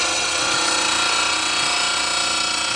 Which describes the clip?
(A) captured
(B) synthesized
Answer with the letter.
B